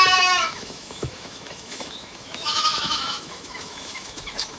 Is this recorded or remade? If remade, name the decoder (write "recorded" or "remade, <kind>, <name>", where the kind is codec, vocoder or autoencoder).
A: remade, autoencoder, DAC-VAE